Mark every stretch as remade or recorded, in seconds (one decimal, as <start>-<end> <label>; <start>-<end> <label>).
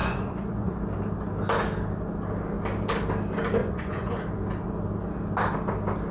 0.0-0.7 remade; 0.7-3.6 recorded; 3.6-4.2 remade; 4.2-6.1 recorded